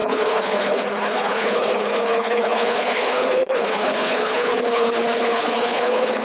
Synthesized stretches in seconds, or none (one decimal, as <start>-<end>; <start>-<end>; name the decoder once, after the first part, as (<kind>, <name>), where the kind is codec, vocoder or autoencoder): 0.0-6.2 (codec, HILCodec)